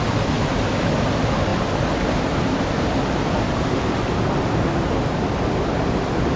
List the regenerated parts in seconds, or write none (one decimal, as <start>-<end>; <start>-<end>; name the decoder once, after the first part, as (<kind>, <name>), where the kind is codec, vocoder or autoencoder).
none